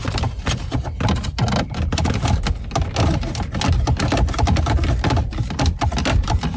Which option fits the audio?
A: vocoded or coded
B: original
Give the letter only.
B